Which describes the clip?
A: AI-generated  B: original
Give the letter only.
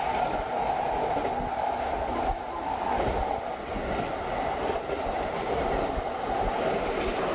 B